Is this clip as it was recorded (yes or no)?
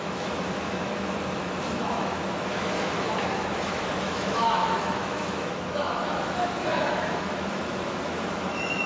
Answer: no